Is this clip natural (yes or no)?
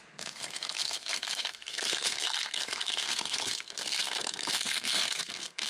no